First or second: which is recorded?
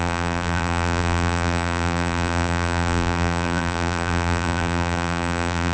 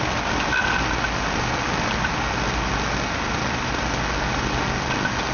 second